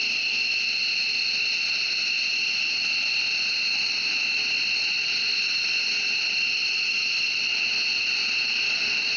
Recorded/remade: recorded